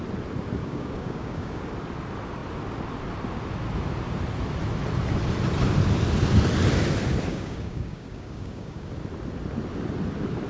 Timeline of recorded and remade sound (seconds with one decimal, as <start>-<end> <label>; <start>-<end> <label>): 0.0-0.6 recorded; 0.6-1.6 remade; 1.6-7.3 recorded; 7.3-8.9 remade; 8.9-10.5 recorded